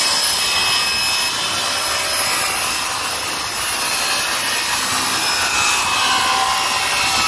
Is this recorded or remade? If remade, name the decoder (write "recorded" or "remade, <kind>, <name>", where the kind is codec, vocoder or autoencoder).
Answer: recorded